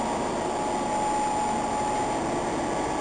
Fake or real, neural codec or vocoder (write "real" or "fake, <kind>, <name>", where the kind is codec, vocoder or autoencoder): real